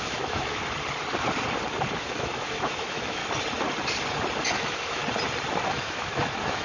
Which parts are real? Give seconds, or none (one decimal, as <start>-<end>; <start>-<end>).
0.6-2.0; 3.2-4.5; 5.0-5.7